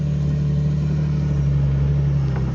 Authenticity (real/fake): real